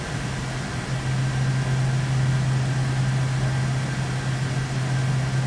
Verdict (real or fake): real